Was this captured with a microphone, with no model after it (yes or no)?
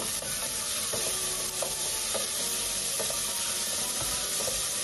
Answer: no